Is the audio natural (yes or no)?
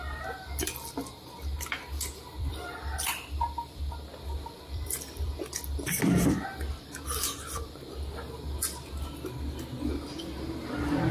no